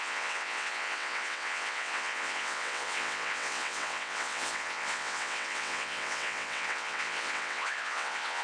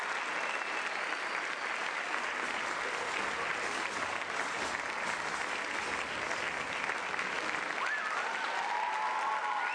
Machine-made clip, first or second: first